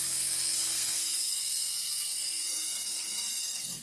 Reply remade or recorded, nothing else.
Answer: remade